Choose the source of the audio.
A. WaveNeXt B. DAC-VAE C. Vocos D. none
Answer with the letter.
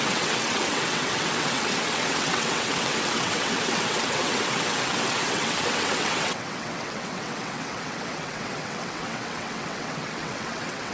A